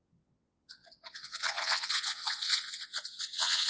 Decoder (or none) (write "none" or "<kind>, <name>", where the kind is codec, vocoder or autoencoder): vocoder, WaveNeXt